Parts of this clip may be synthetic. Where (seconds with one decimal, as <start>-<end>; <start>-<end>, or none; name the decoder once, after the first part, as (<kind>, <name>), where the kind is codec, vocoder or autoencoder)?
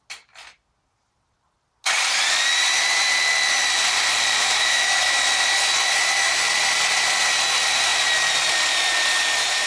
4.4-5.2 (autoencoder, DAC-VAE)